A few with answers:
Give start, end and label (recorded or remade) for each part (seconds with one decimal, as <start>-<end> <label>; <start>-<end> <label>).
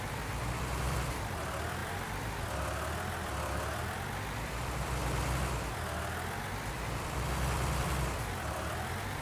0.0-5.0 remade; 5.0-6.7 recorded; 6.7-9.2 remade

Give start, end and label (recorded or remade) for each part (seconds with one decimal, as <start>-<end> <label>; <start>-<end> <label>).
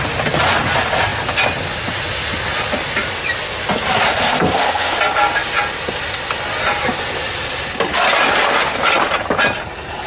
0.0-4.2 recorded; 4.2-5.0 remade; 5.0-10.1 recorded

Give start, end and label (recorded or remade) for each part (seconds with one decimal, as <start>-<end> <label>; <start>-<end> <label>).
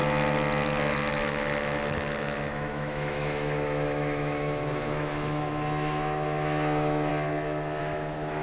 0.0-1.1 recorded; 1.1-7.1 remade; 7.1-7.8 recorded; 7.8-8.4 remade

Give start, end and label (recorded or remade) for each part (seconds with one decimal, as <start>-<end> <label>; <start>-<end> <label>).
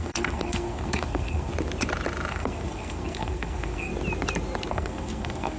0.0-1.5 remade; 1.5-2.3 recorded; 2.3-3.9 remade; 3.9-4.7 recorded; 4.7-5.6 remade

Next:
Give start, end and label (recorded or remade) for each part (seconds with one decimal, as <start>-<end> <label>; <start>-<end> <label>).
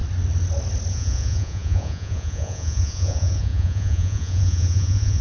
0.0-0.9 recorded; 0.9-5.2 remade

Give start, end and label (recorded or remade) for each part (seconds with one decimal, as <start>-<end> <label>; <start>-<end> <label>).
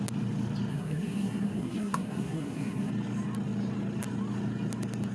0.0-0.7 recorded; 0.7-2.9 remade; 2.9-5.1 recorded